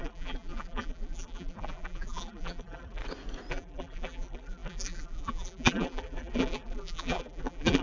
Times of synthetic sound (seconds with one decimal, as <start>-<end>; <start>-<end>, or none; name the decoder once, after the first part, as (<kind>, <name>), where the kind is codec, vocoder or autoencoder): 0.0-3.0 (vocoder, BigVGAN v2); 3.5-7.8